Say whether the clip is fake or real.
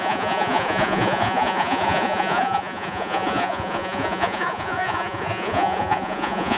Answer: fake